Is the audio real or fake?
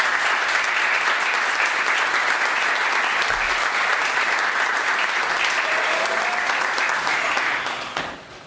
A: real